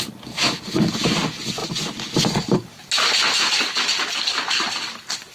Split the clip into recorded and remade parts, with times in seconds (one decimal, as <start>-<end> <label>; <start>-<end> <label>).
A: 0.0-5.3 recorded